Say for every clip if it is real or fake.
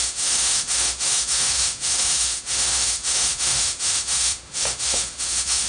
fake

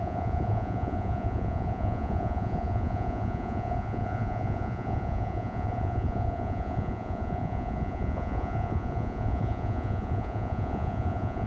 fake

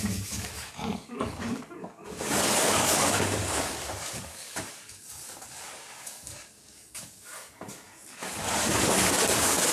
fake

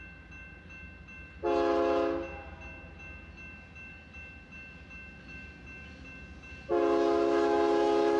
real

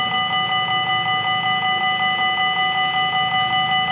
real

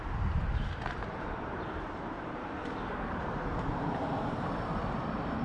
fake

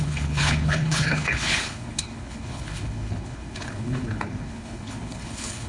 fake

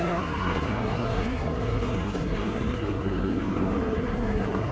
fake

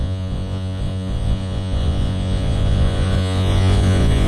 fake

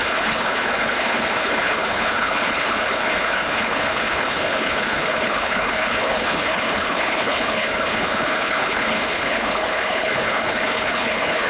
fake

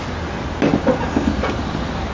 real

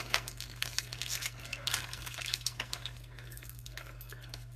fake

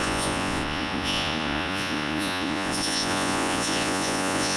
fake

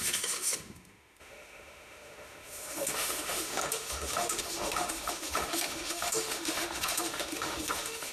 fake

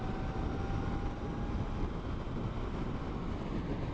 real